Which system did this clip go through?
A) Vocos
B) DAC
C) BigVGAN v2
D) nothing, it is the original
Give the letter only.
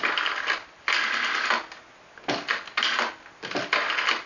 D